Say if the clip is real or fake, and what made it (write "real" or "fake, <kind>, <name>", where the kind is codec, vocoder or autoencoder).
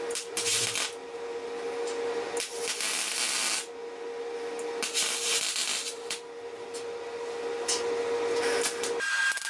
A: real